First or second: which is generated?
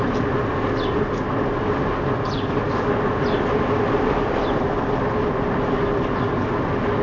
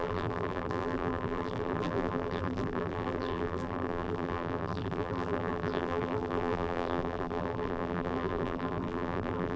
second